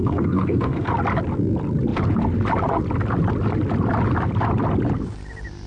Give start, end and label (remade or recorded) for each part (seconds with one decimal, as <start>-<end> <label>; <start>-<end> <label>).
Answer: 0.0-0.9 remade; 0.9-5.7 recorded